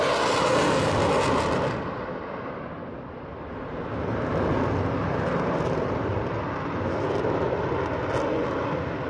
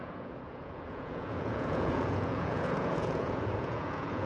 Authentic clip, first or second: first